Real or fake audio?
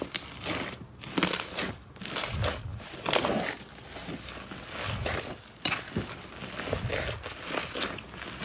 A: real